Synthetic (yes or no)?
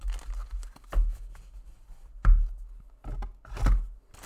no